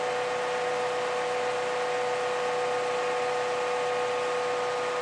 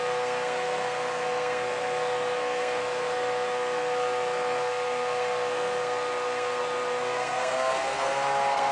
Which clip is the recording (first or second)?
first